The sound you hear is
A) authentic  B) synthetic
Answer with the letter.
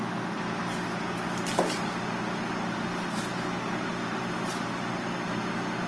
A